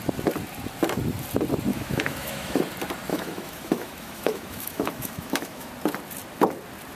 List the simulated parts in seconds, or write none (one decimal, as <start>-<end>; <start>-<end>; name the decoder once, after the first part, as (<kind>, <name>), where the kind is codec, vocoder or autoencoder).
1.7-2.6 (autoencoder, DAC-VAE); 3.1-5.7